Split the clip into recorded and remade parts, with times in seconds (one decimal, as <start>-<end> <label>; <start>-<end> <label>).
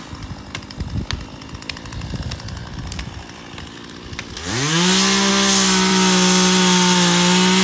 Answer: 0.0-2.6 recorded; 2.6-3.4 remade; 3.4-7.6 recorded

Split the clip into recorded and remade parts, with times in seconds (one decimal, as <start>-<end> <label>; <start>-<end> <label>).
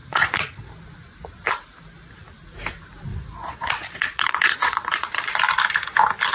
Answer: 0.0-0.7 remade; 0.7-3.1 recorded; 3.1-5.3 remade; 5.3-6.3 recorded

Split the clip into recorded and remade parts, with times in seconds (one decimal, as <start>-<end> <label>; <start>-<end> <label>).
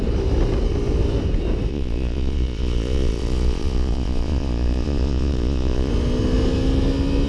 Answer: 0.0-1.7 recorded; 1.7-5.9 remade; 5.9-7.3 recorded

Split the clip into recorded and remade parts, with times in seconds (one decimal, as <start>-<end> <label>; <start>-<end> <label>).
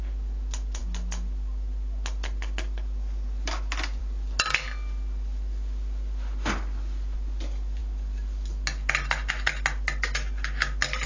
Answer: 0.0-11.1 recorded